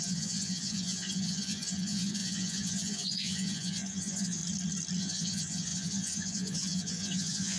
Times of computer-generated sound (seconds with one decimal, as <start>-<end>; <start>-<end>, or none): 0.0-4.4; 5.0-7.6